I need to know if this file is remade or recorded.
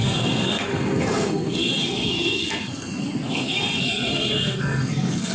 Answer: remade